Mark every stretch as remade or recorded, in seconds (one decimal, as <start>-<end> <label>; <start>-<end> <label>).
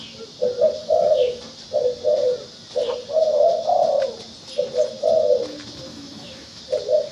0.0-0.8 recorded; 0.8-1.4 remade; 1.4-5.9 recorded; 5.9-6.6 remade; 6.6-7.1 recorded